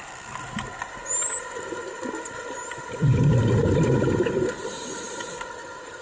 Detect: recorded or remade remade